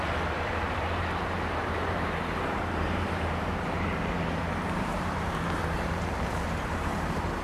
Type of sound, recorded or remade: remade